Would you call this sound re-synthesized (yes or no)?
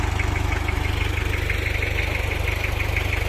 no